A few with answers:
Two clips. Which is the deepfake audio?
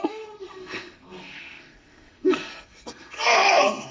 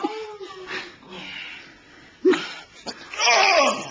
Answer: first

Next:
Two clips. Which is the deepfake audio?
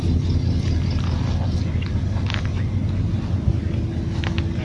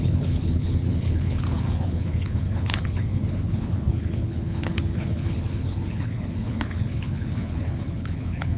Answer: second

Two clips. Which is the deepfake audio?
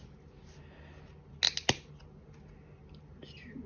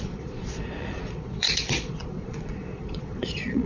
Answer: second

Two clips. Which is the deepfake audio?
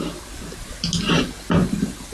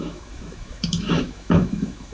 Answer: second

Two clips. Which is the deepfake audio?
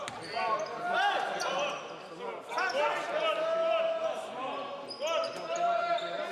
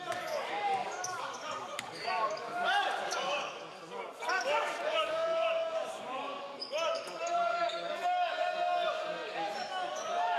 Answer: second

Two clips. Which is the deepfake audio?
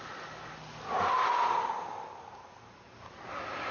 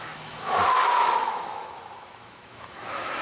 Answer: second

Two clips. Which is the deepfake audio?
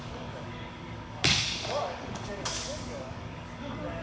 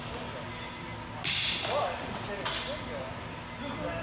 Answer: first